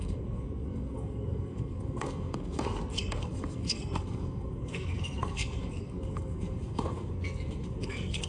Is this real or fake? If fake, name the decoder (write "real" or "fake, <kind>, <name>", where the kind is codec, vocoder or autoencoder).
fake, codec, SNAC